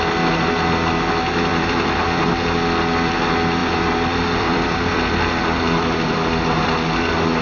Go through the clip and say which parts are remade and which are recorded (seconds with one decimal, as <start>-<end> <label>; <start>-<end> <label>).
0.0-1.5 recorded; 1.5-2.3 remade; 2.3-3.6 recorded; 3.6-6.6 remade; 6.6-7.4 recorded